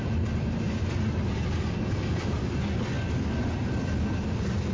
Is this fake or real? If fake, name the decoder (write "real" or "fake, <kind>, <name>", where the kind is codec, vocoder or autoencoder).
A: real